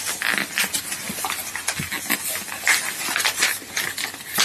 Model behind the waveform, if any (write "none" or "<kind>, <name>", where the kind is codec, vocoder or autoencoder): none